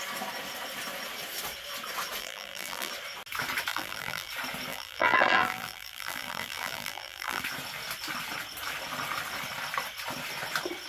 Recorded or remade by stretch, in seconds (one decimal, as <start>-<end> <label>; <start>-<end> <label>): 0.0-2.2 recorded; 2.2-2.9 remade; 2.9-3.7 recorded; 3.7-4.3 remade; 4.3-4.7 recorded; 4.7-7.4 remade; 7.4-10.9 recorded